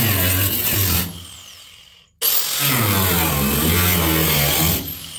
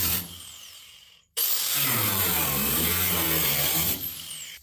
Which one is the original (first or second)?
first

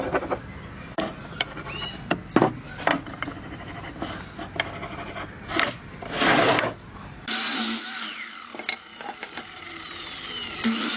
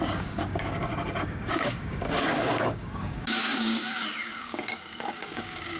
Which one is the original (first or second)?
first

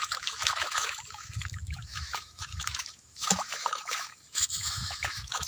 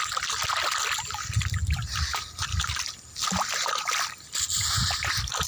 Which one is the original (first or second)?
second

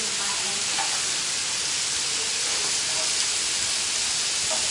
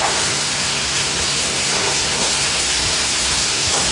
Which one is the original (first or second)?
first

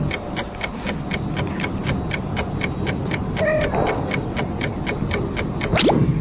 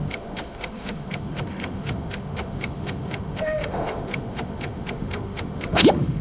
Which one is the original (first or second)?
first